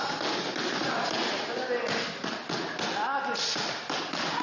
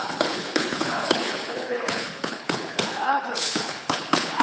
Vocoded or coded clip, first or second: second